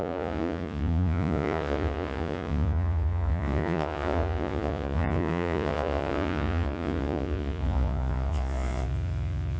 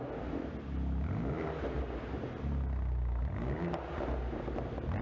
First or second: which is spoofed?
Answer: first